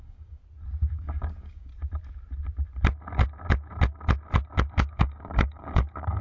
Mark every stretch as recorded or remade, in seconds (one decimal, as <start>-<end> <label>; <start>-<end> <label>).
0.0-0.4 remade; 0.4-0.9 recorded; 0.9-1.7 remade; 1.7-4.7 recorded; 4.7-6.2 remade